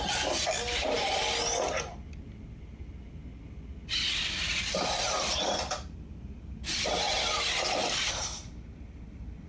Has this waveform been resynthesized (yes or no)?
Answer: no